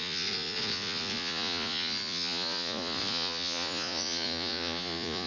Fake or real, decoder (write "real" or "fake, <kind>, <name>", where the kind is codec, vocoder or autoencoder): fake, vocoder, Vocos